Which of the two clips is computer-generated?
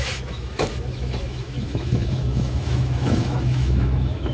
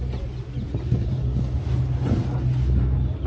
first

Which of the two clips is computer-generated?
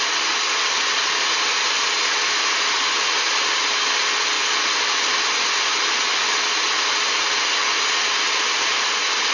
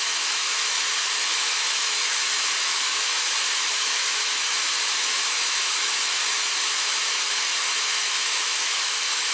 second